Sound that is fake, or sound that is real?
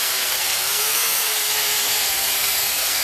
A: fake